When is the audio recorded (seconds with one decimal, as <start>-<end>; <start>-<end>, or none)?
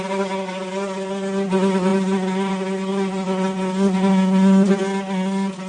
0.0-5.7